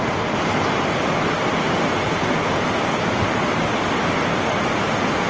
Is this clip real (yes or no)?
yes